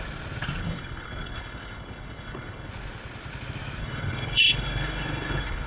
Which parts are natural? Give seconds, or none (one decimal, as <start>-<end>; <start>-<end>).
0.0-0.6; 2.7-3.8